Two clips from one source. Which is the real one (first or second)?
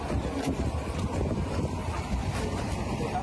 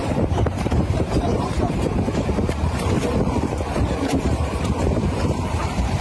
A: first